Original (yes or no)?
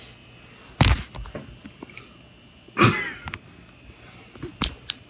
yes